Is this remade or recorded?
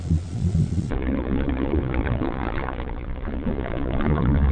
remade